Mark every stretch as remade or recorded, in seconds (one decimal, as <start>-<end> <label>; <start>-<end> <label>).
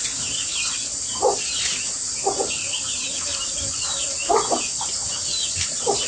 0.0-6.1 recorded